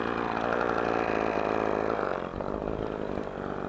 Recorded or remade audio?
recorded